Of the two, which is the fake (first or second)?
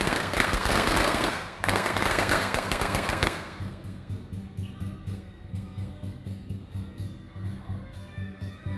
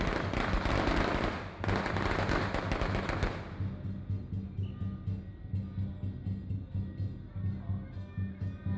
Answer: first